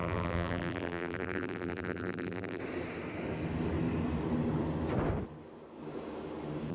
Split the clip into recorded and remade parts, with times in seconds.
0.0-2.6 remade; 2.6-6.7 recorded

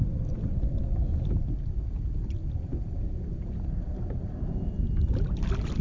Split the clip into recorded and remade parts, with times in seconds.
0.0-5.8 recorded

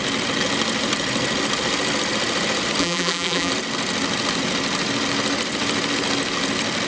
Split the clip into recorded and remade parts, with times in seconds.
0.0-2.8 recorded; 2.8-3.5 remade; 3.5-6.9 recorded